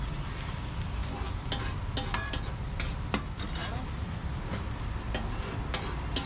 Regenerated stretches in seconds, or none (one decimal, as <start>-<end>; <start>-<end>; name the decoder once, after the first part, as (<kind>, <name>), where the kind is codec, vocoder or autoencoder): none